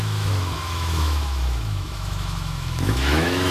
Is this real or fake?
fake